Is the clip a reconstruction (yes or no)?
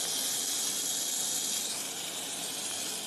no